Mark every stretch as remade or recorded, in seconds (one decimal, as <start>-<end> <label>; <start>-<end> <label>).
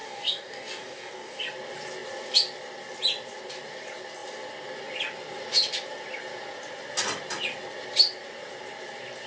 0.0-1.4 remade; 1.4-9.3 recorded